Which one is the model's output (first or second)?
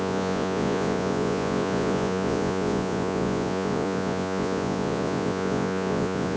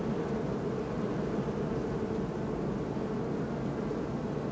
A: first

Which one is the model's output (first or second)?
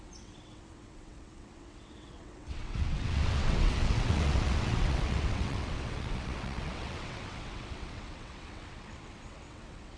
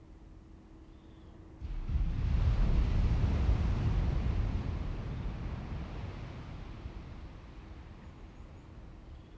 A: first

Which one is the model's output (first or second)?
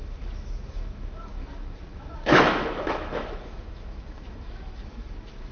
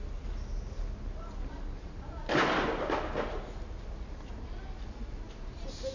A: first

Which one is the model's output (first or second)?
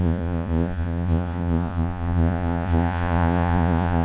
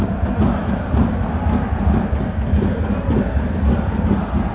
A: first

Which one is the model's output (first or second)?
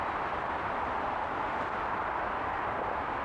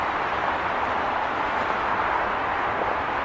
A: second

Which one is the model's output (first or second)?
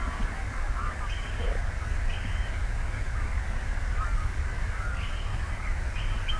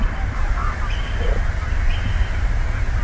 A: first